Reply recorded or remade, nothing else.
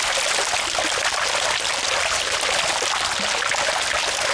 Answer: recorded